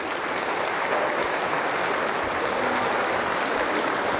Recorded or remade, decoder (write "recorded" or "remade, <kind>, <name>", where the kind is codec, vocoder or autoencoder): recorded